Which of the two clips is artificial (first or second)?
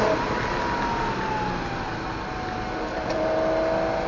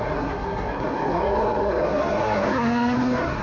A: second